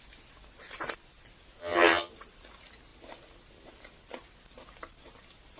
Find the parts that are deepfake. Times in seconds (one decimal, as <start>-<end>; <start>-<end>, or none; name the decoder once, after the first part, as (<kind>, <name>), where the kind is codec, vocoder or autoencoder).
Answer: 1.6-2.1 (vocoder, HiFi-GAN)